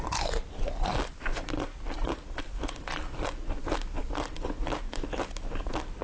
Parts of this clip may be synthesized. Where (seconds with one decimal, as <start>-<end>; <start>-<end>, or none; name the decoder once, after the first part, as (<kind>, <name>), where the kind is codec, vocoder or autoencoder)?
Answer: none